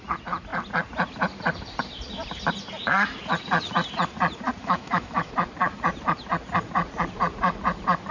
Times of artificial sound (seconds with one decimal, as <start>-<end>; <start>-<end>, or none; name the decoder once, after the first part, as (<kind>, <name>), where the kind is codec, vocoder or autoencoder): 4.6-5.3 (autoencoder, DAC-VAE)